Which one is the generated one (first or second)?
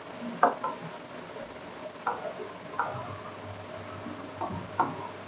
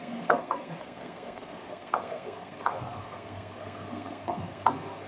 second